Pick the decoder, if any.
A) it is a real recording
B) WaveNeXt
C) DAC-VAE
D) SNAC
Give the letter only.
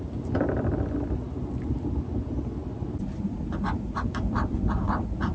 A